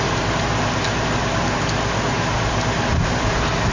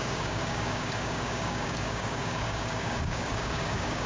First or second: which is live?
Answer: first